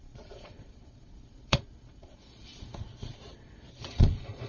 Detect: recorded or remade remade